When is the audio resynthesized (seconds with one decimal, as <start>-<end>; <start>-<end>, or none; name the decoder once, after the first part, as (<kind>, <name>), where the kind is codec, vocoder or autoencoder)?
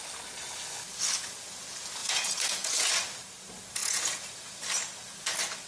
2.0-2.9 (vocoder, Vocos); 3.8-4.6